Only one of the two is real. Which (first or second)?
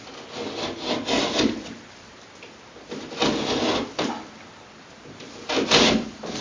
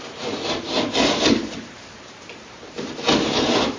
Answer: first